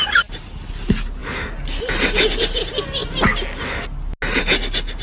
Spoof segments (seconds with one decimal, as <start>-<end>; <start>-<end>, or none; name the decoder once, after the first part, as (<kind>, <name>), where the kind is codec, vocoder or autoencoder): none